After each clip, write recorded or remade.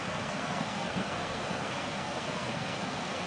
remade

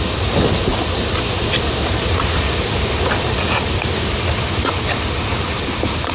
recorded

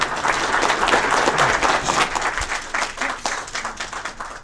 recorded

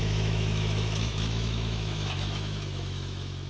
remade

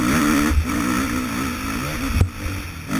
recorded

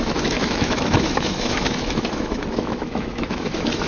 remade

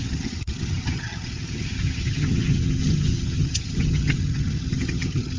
remade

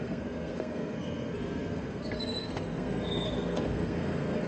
remade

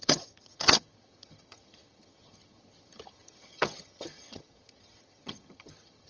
remade